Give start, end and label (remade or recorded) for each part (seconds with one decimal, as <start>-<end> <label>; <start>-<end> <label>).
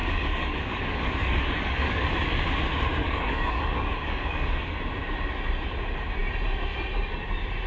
0.0-2.5 remade; 2.5-3.0 recorded; 3.0-4.8 remade; 4.8-7.7 recorded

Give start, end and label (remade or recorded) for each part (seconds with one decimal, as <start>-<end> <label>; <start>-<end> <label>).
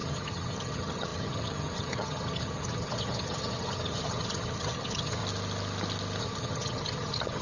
0.0-5.2 remade; 5.2-6.2 recorded; 6.2-7.4 remade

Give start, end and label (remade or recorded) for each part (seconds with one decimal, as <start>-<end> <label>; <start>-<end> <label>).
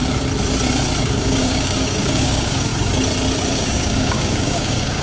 0.0-1.0 recorded; 1.0-2.7 remade; 2.7-3.5 recorded; 3.5-5.0 remade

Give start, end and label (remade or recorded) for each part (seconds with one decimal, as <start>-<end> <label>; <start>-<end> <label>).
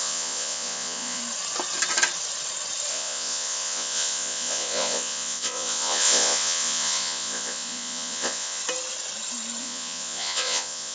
0.0-1.2 remade; 1.2-2.9 recorded; 2.9-8.6 remade; 8.6-9.6 recorded; 9.6-10.9 remade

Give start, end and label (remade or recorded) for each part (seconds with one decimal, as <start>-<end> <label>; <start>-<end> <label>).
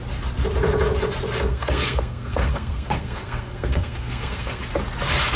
0.0-1.5 recorded; 1.5-4.6 remade; 4.6-5.4 recorded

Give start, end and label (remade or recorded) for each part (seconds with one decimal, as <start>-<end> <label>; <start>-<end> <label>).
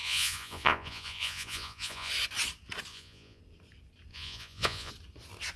0.0-2.1 remade; 2.1-2.9 recorded; 2.9-3.4 remade; 3.4-4.1 recorded; 4.1-4.9 remade; 4.9-5.6 recorded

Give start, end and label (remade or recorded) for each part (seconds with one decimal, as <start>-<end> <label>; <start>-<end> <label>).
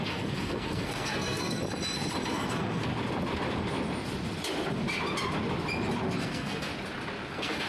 0.0-1.6 remade; 1.6-2.3 recorded; 2.3-2.9 remade; 2.9-6.2 recorded; 6.2-6.7 remade; 6.7-7.3 recorded; 7.3-7.7 remade